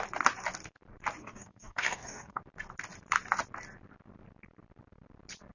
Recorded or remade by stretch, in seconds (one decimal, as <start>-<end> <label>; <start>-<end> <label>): 0.0-1.2 recorded; 1.2-2.4 remade; 2.4-5.5 recorded

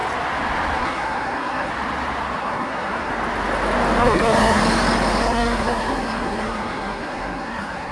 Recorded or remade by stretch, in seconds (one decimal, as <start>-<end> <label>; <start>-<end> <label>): 0.0-0.8 recorded; 0.8-1.7 remade; 1.7-2.4 recorded; 2.4-3.1 remade; 3.1-4.0 recorded; 4.0-4.6 remade; 4.6-5.2 recorded; 5.2-7.9 remade

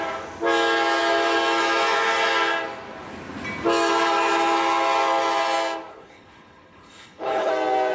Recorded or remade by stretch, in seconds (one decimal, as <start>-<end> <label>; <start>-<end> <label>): 0.0-5.9 recorded; 5.9-7.5 remade; 7.5-7.9 recorded

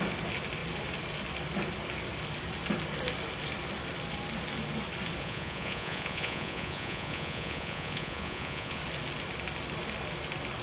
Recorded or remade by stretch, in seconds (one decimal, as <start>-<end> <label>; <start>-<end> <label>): 0.0-5.2 recorded; 5.2-8.8 remade; 8.8-10.6 recorded

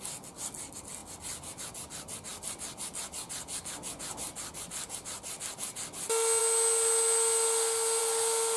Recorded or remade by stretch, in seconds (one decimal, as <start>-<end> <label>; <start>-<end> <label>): 0.0-8.6 recorded